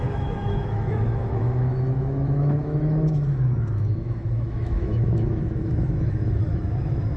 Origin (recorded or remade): remade